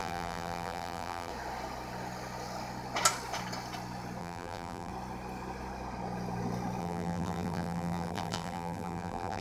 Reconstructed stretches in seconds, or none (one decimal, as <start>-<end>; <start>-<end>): 0.0-1.3; 4.2-4.9; 6.8-9.4